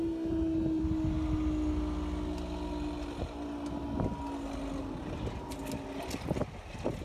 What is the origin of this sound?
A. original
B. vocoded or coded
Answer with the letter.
A